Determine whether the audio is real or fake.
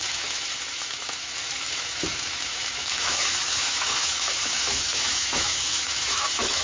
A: fake